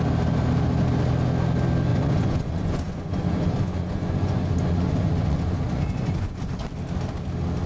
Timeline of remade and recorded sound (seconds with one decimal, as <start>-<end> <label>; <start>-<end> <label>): 0.0-1.9 recorded; 1.9-6.5 remade; 6.5-7.7 recorded